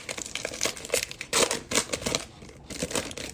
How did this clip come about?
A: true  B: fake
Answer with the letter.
A